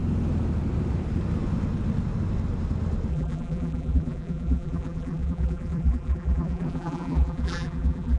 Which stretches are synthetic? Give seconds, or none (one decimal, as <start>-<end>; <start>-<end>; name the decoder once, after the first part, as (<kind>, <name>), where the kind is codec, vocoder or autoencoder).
3.1-8.2 (vocoder, BigVGAN v2)